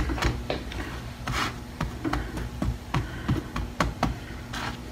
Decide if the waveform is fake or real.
real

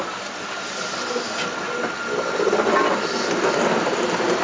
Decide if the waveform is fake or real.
real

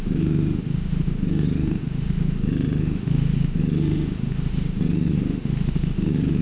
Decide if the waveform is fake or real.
fake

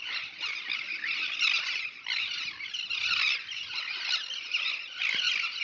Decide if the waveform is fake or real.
real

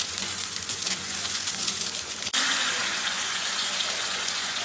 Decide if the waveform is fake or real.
fake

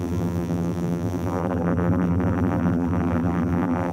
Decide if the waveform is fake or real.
fake